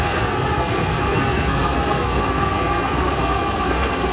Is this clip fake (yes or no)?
yes